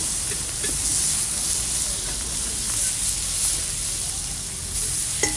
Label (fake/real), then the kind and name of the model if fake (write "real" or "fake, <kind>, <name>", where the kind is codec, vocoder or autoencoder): real